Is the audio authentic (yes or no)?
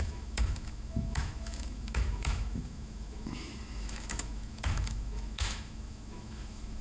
no